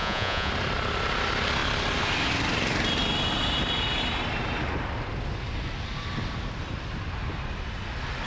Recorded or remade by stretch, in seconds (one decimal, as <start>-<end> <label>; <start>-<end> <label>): 0.0-0.5 remade; 0.5-8.3 recorded